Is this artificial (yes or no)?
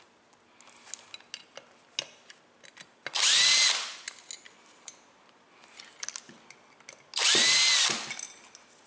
no